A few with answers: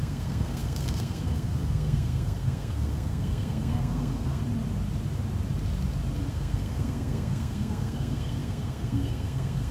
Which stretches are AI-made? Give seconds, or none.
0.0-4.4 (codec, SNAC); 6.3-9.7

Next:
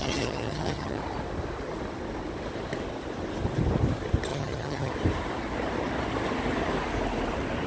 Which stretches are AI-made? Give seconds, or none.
0.0-1.0 (vocoder, HiFi-GAN); 4.3-4.9

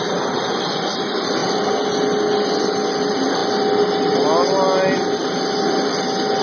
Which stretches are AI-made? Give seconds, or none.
none

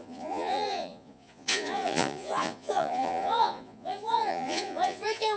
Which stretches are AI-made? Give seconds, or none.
0.0-5.4 (vocoder, Vocos)

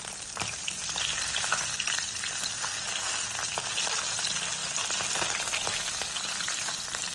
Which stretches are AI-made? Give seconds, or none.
none

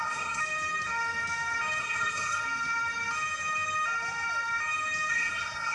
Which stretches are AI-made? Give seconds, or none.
0.0-0.4 (codec, SNAC); 1.8-2.4; 5.1-5.7

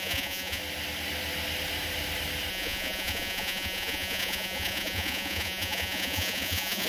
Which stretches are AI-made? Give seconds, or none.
0.0-0.6 (vocoder, Vocos); 2.5-6.9

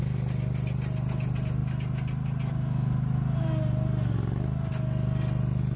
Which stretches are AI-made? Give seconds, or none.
none